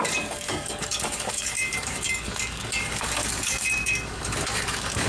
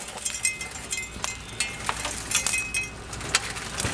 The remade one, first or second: first